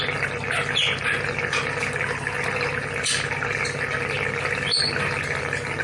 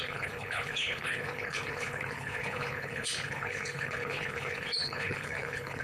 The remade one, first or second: second